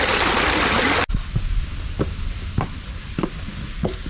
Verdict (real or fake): real